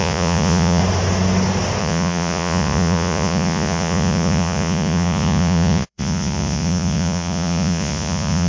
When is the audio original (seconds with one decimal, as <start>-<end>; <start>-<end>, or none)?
0.8-1.8